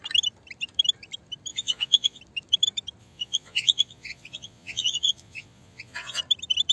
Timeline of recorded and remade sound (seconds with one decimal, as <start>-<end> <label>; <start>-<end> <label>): 0.0-1.5 recorded; 1.5-2.2 remade; 2.2-3.0 recorded; 3.0-6.2 remade; 6.2-6.7 recorded